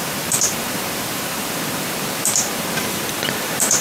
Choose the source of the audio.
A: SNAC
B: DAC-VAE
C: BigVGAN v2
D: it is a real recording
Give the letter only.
C